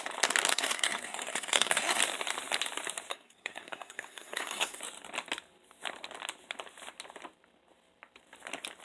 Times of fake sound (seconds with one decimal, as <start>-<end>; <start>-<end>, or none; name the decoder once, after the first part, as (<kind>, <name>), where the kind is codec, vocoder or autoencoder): 0.5-2.0 (codec, SNAC); 3.1-4.8